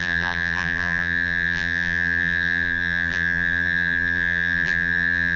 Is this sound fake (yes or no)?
yes